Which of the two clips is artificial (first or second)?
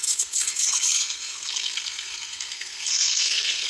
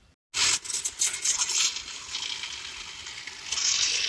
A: first